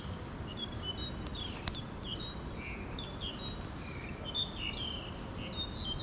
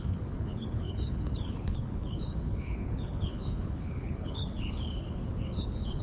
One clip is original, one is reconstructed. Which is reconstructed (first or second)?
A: second